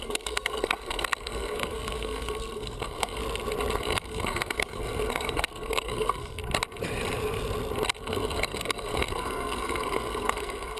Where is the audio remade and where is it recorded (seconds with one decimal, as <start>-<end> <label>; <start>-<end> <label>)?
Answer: 0.0-3.2 remade; 3.2-3.8 recorded; 3.8-6.4 remade; 6.4-8.0 recorded; 8.0-10.8 remade